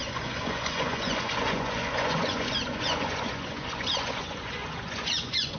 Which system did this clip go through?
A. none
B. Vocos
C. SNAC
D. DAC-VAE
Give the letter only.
B